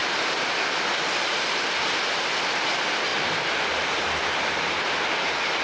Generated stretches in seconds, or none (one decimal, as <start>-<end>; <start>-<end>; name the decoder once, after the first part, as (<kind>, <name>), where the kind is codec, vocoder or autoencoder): 0.0-2.0 (vocoder, BigVGAN v2); 3.1-3.9